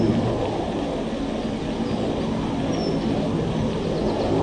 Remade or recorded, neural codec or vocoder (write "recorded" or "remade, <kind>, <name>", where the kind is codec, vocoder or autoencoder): recorded